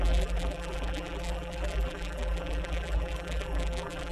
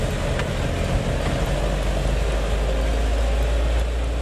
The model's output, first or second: first